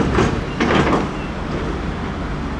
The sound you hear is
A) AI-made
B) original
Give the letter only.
B